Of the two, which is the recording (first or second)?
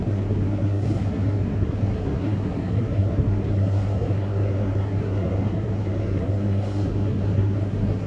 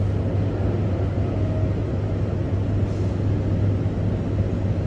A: second